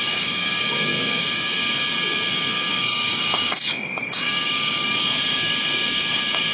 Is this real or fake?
fake